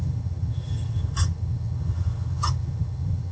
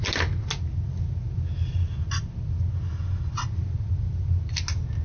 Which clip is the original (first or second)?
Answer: second